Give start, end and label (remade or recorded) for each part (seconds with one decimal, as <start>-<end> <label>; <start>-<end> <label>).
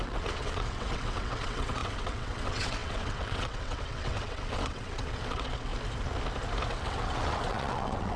0.0-5.7 remade; 5.7-6.7 recorded; 6.7-8.2 remade